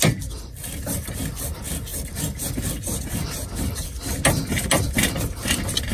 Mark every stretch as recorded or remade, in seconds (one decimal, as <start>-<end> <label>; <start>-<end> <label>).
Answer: 0.0-1.9 recorded; 1.9-2.5 remade; 2.5-5.9 recorded